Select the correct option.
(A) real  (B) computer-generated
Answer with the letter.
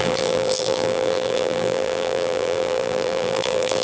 B